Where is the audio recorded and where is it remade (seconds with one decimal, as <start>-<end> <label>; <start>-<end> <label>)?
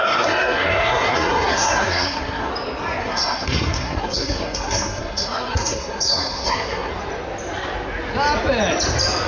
0.0-2.5 remade; 2.5-3.0 recorded; 3.0-6.9 remade; 6.9-9.3 recorded